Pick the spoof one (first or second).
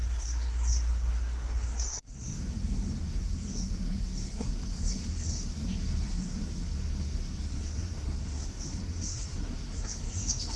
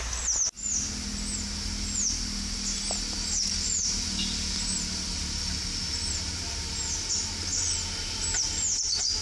first